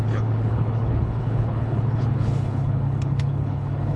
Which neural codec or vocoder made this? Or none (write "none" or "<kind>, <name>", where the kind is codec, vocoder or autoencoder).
codec, HILCodec